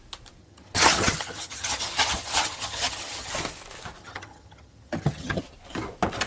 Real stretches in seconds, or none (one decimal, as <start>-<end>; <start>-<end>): 0.0-0.4; 3.3-4.0; 5.4-6.3